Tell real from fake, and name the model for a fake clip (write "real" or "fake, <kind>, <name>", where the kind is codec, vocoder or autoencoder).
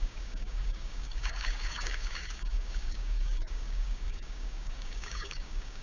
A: fake, codec, DAC